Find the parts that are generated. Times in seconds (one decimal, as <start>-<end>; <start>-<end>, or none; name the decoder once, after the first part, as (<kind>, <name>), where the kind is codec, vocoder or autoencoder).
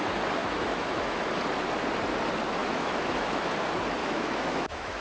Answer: 0.4-1.3 (autoencoder, DAC-VAE); 2.6-3.5; 4.0-5.0